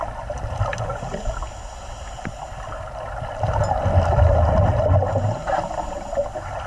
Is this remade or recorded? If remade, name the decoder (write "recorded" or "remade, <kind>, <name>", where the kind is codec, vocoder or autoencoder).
recorded